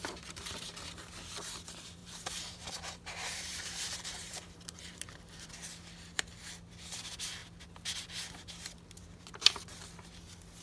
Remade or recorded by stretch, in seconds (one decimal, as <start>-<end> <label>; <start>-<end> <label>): 0.0-0.7 remade; 0.7-2.0 recorded; 2.0-5.5 remade; 5.5-10.6 recorded